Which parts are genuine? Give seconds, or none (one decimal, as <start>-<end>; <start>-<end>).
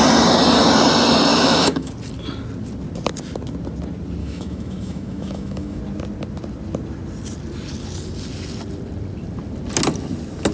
0.0-1.3; 1.9-4.2; 5.8-10.5